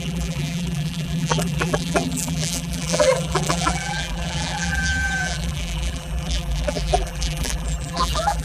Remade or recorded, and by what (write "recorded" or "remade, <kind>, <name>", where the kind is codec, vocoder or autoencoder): remade, vocoder, BigVGAN v2